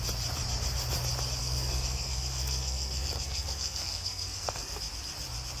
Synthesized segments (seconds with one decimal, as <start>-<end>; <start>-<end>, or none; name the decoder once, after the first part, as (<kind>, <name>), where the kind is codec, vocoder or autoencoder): 1.4-4.8 (codec, SNAC)